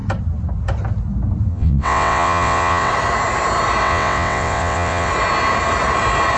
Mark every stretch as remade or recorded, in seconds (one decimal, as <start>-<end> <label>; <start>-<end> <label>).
0.0-1.5 recorded; 1.5-2.9 remade; 2.9-3.8 recorded; 3.8-5.1 remade; 5.1-6.4 recorded